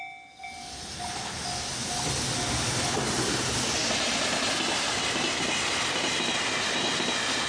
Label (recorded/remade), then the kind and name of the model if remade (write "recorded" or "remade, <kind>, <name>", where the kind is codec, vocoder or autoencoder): recorded